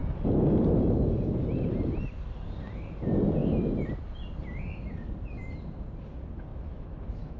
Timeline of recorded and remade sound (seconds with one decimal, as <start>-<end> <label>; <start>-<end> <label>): 0.0-6.5 recorded; 6.5-7.4 remade